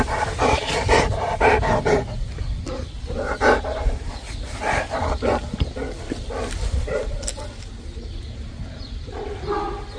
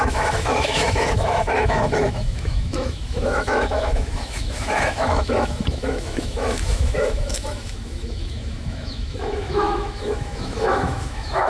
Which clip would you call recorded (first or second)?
first